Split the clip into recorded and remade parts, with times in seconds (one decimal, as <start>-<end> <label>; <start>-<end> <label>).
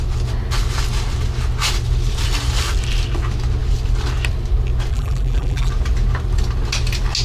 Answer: 0.0-4.9 recorded; 4.9-5.7 remade; 5.7-7.2 recorded